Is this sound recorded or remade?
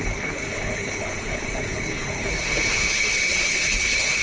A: remade